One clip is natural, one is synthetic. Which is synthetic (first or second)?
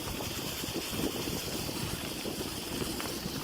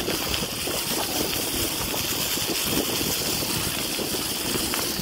first